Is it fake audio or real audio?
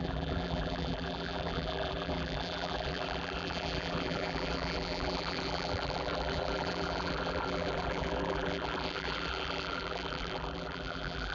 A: fake